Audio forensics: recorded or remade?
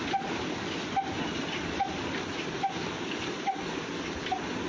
recorded